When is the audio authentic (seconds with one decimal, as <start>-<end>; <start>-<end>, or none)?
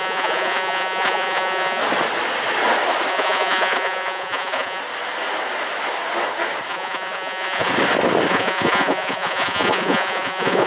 1.8-3.1; 4.8-6.7; 7.7-8.3